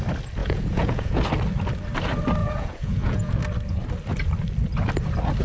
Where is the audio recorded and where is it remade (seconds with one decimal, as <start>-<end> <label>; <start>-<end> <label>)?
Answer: 0.0-0.4 recorded; 0.4-1.2 remade; 1.2-2.4 recorded; 2.4-3.3 remade; 3.3-5.4 recorded